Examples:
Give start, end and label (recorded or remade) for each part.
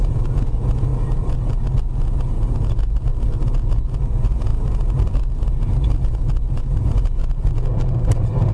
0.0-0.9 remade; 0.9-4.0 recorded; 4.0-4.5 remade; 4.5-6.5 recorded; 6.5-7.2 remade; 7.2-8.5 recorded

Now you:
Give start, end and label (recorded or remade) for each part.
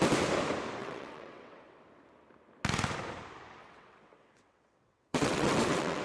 0.0-0.8 recorded; 0.8-1.8 remade; 1.8-3.6 recorded; 3.6-6.0 remade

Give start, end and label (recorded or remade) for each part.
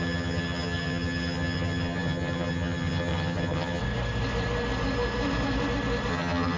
0.0-3.8 remade; 3.8-6.1 recorded; 6.1-6.6 remade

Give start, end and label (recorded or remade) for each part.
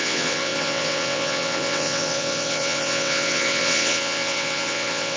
0.0-5.2 remade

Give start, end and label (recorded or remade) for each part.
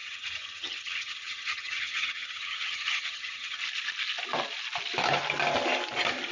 0.0-3.6 remade; 3.6-6.3 recorded